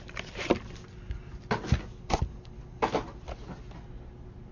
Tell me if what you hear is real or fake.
real